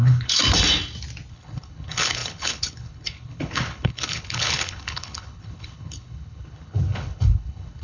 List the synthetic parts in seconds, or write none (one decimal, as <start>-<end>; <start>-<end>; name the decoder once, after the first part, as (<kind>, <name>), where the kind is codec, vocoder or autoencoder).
0.0-0.4 (codec, HILCodec); 1.3-7.8